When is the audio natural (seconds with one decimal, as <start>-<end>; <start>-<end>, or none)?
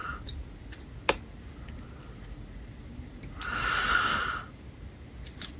0.0-5.6